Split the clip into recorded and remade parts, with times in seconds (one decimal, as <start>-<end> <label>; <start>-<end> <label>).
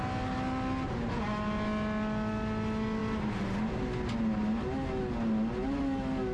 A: 0.0-6.3 recorded